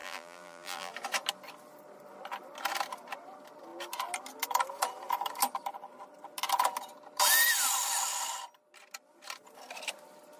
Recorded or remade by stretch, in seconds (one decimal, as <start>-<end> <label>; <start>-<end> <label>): 0.0-0.9 remade; 0.9-10.4 recorded